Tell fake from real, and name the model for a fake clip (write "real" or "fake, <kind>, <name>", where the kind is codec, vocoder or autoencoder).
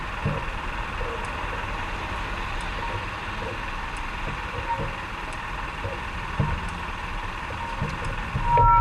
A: real